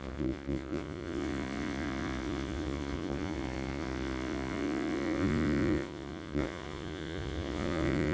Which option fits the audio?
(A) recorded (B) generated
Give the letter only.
B